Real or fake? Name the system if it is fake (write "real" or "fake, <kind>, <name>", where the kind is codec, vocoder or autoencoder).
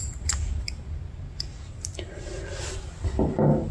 real